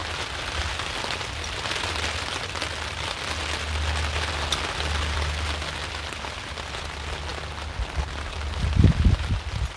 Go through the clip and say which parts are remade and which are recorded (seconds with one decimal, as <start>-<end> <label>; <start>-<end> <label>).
0.0-9.8 recorded